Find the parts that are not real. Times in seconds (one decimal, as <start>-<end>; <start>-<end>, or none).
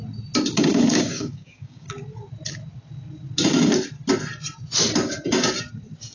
0.6-1.9